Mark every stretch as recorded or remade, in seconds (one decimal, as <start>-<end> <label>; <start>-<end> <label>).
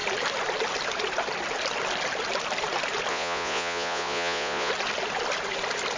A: 0.0-3.1 recorded; 3.1-4.7 remade; 4.7-6.0 recorded